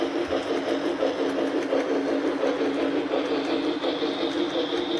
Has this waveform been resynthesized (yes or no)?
no